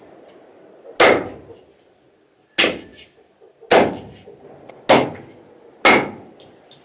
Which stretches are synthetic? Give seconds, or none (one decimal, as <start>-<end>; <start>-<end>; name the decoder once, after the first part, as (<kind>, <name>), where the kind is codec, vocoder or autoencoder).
none